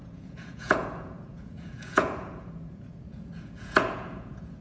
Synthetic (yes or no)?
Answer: yes